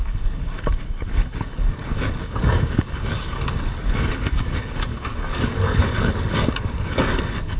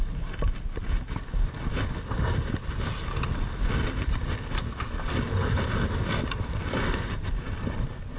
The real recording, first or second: second